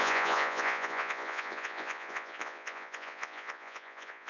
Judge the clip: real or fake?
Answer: fake